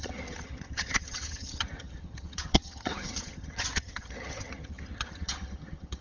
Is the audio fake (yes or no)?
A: yes